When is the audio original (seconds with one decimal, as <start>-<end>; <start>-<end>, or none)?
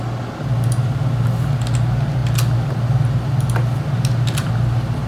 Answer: 0.0-5.1